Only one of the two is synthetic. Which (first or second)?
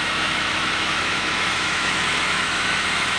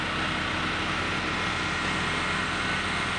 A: first